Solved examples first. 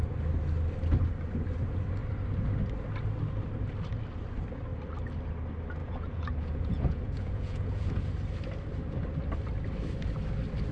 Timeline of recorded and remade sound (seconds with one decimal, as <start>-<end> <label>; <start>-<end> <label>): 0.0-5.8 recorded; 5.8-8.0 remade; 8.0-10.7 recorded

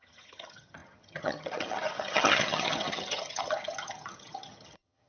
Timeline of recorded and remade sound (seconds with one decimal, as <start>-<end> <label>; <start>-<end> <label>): 0.0-5.1 remade

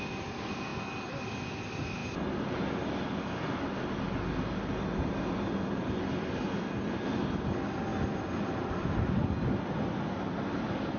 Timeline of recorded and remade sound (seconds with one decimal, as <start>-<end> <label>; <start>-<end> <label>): 0.0-11.0 recorded

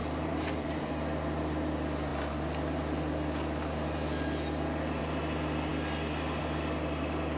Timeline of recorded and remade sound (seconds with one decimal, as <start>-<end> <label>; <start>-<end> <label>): 0.0-0.9 remade; 0.9-7.4 recorded

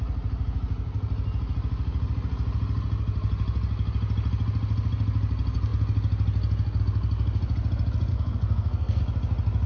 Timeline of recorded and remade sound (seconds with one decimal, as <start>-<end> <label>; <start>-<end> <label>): 0.0-8.1 recorded; 8.1-9.0 remade; 9.0-9.7 recorded

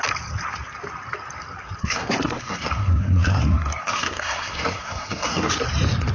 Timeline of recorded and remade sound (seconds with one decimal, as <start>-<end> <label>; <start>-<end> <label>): 0.0-1.8 recorded; 1.8-5.5 remade; 5.5-6.1 recorded

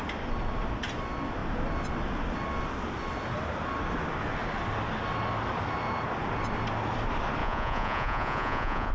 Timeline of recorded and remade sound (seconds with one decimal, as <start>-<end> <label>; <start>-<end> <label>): 0.0-7.4 recorded; 7.4-8.9 remade